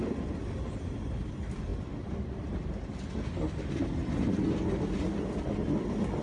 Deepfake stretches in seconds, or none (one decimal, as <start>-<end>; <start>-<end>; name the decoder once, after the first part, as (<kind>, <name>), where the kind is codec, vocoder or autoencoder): none